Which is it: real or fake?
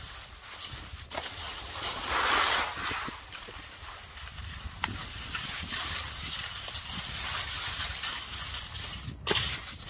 real